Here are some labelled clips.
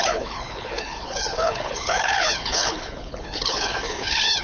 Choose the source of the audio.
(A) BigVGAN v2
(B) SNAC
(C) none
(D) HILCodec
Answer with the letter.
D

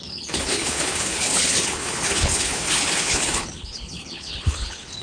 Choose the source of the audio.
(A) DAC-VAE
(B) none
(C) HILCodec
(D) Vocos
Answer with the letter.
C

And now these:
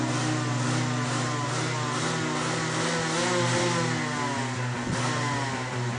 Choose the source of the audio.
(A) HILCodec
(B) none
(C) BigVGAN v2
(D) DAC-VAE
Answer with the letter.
B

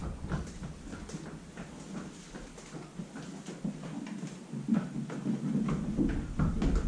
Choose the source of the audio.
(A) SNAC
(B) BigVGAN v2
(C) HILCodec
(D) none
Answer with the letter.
D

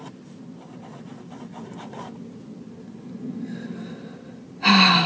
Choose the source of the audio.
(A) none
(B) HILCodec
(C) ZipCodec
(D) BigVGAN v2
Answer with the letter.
A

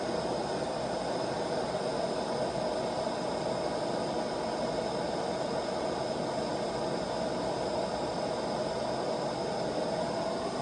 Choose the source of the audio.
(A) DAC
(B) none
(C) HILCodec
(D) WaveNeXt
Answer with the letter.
B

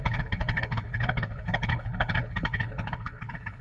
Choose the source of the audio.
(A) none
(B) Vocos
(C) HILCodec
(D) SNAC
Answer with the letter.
C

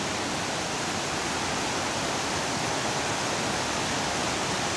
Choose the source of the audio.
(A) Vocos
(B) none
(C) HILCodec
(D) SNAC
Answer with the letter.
B